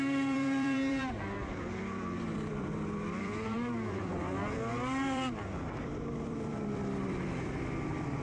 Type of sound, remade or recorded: remade